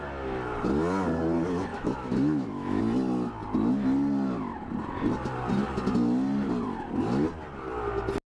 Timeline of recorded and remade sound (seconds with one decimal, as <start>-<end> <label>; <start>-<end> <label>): 0.0-1.7 recorded; 1.7-2.8 remade; 2.8-8.3 recorded